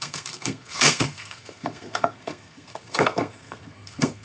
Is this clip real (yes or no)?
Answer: no